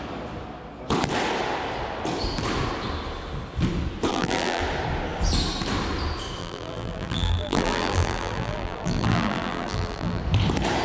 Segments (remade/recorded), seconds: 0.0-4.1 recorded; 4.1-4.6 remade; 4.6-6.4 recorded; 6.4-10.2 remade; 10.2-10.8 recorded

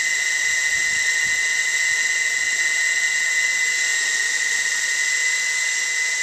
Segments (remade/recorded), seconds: 0.0-6.2 recorded